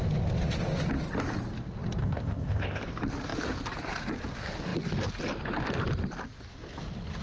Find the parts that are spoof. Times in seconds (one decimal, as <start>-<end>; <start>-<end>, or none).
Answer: 2.0-2.8